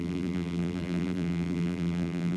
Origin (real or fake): fake